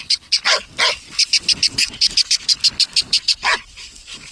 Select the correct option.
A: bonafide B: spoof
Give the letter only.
A